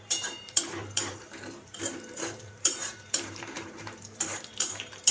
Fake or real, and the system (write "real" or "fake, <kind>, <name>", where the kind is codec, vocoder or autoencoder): fake, vocoder, BigVGAN v2